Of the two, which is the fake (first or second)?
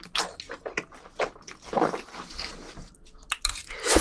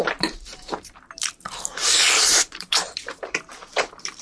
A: second